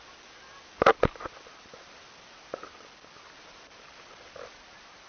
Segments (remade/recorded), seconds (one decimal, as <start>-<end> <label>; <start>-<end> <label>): 0.0-5.1 recorded

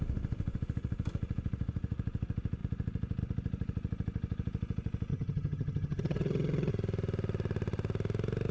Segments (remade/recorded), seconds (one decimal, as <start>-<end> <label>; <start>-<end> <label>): 0.0-5.1 recorded; 5.1-6.7 remade; 6.7-8.5 recorded

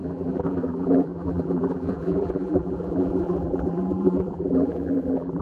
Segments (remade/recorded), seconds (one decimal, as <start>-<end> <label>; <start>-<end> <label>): 0.0-5.4 remade

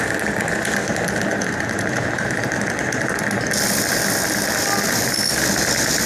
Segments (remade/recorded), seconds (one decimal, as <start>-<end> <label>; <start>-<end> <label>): 0.0-1.3 recorded; 1.3-2.5 remade; 2.5-6.1 recorded

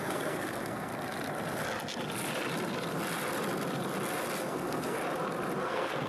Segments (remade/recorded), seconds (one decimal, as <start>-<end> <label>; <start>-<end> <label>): 0.0-0.9 remade; 0.9-4.4 recorded; 4.4-5.0 remade; 5.0-5.6 recorded; 5.6-6.1 remade

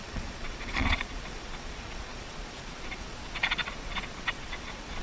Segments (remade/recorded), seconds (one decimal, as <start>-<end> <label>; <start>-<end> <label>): 0.0-5.0 remade

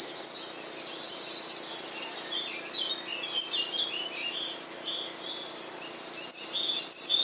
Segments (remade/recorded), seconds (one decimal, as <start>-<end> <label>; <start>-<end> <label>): 0.0-7.2 recorded